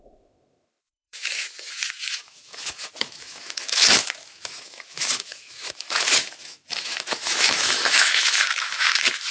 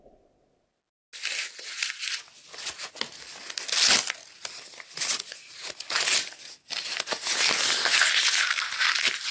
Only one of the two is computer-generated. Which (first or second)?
first